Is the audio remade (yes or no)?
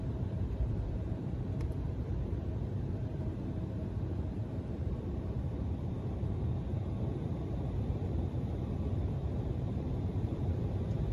yes